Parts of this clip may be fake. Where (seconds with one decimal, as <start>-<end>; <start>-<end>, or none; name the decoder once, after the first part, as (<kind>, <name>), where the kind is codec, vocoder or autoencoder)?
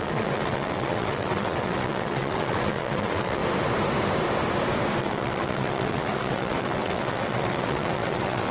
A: 0.0-3.4 (vocoder, WaveNeXt); 5.0-8.5